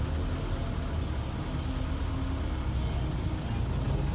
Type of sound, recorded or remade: recorded